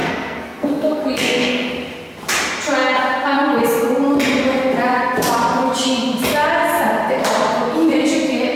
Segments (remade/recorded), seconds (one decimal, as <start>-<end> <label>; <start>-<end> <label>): 0.0-1.7 remade; 1.7-8.6 recorded